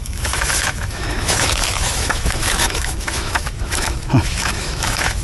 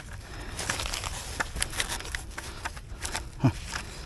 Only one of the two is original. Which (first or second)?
second